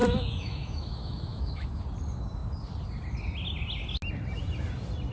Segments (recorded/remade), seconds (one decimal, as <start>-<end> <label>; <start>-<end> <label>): 0.0-1.8 remade; 1.8-5.1 recorded